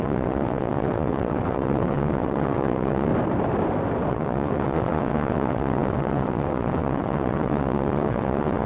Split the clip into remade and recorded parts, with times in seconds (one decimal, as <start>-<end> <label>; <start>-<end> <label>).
0.0-3.1 remade; 3.1-4.1 recorded; 4.1-8.7 remade